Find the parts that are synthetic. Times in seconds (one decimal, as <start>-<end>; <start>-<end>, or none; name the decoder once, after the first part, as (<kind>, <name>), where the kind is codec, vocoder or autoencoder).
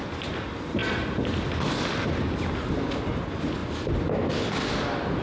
none